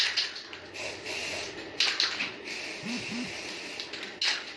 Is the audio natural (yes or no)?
yes